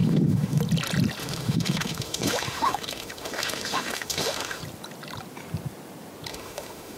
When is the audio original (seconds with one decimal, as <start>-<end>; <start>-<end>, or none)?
0.6-1.2; 4.6-6.3